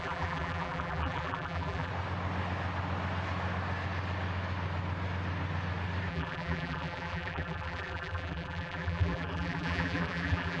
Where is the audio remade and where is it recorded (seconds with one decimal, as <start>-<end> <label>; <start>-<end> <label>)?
0.0-1.9 remade; 1.9-6.1 recorded; 6.1-10.6 remade